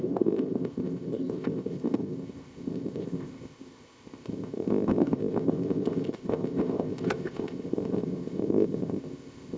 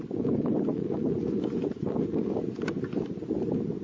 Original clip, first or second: second